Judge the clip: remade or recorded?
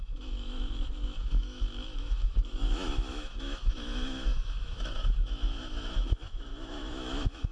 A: remade